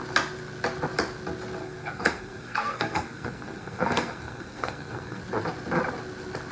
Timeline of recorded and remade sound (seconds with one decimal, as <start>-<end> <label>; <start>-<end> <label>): 0.0-1.6 recorded; 1.6-5.2 remade; 5.2-6.5 recorded

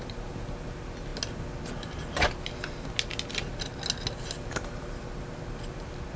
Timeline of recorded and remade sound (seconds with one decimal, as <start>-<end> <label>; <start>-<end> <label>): 0.0-6.2 recorded